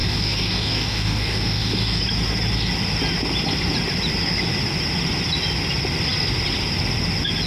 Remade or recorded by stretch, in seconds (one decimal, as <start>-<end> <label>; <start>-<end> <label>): 0.0-2.0 remade; 2.0-7.5 recorded